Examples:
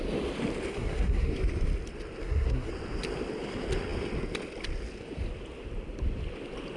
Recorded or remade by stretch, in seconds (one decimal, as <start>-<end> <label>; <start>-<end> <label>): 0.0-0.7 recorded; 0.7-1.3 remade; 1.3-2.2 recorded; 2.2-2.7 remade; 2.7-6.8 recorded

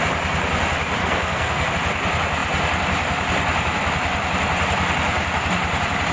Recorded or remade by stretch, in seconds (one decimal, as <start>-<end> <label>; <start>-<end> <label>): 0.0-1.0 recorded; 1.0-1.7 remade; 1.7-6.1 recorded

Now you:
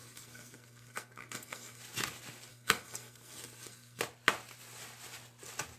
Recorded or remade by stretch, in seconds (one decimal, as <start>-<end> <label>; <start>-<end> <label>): 0.0-1.8 remade; 1.8-2.5 recorded; 2.5-4.0 remade; 4.0-5.8 recorded

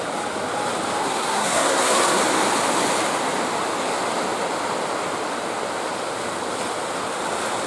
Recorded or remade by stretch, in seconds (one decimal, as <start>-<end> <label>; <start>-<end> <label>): 0.0-1.0 recorded; 1.0-2.2 remade; 2.2-7.7 recorded

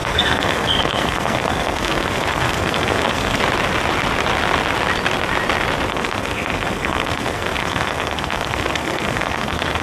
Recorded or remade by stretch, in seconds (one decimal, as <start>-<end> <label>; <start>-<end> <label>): 0.0-3.4 remade; 3.4-5.9 recorded; 5.9-9.8 remade

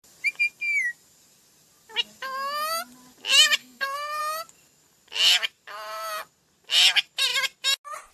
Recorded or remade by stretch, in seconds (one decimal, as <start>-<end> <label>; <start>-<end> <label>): 0.0-3.6 recorded; 3.6-4.2 remade; 4.2-8.1 recorded